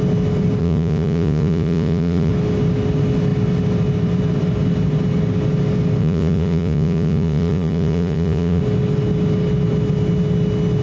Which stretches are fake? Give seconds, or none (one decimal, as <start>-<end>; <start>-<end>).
0.6-2.3; 6.0-8.6